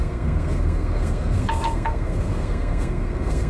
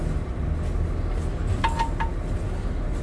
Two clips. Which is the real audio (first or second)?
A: second